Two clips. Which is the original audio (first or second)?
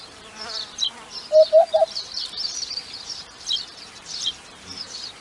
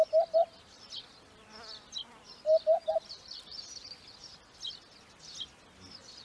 second